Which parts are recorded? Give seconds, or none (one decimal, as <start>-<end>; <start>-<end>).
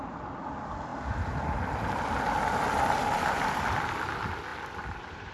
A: 0.0-0.9; 3.6-4.5